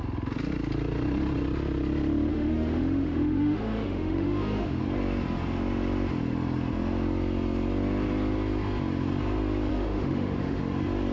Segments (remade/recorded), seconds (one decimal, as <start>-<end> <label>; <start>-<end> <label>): 0.0-2.3 recorded; 2.3-4.8 remade; 4.8-9.7 recorded; 9.7-10.6 remade; 10.6-11.1 recorded